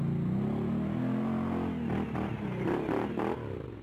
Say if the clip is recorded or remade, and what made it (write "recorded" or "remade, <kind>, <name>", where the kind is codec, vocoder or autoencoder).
recorded